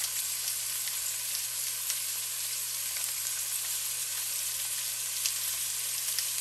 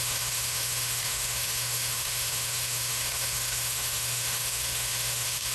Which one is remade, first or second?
second